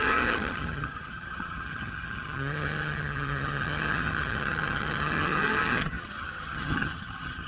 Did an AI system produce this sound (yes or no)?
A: yes